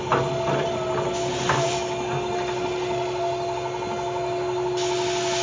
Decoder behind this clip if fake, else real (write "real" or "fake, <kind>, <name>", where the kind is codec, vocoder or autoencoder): real